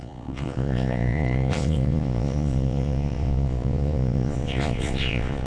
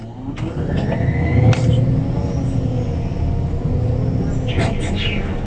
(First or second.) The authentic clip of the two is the second